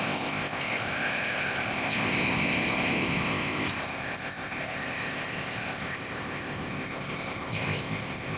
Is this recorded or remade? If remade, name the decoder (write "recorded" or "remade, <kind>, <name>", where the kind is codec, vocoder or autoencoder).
remade, codec, ZipCodec